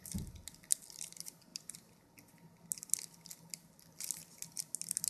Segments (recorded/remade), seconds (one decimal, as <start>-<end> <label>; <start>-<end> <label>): 0.0-5.1 recorded